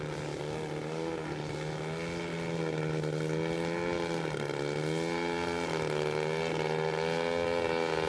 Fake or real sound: real